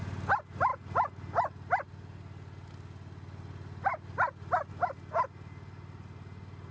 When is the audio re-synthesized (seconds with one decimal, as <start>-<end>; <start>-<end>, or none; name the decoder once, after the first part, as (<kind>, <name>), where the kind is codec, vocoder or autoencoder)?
none